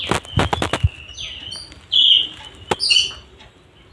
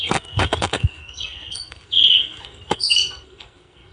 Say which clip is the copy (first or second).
second